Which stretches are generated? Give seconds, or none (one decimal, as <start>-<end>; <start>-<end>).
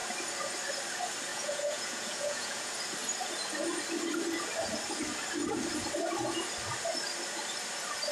1.3-2.7